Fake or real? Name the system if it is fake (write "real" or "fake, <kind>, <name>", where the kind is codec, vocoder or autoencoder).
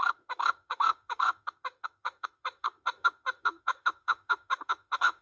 fake, autoencoder, DAC-VAE